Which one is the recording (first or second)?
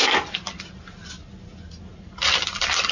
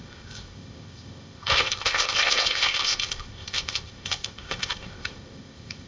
first